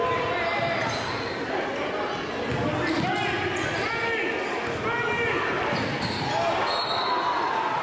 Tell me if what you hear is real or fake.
real